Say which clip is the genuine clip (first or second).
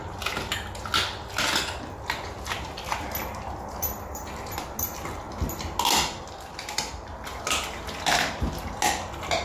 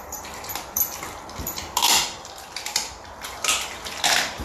first